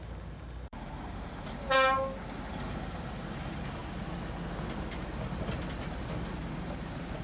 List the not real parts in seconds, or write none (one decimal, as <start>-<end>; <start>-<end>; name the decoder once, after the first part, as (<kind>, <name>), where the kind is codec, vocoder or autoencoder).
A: 0.0-3.8 (vocoder, BigVGAN v2); 6.6-7.2